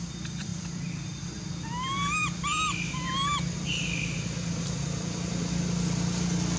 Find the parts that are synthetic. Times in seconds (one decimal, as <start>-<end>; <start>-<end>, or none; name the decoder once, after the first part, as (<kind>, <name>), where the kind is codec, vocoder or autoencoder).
none